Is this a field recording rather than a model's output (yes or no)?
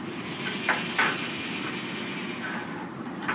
yes